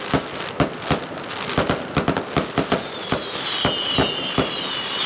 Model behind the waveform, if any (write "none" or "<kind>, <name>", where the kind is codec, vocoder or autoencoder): none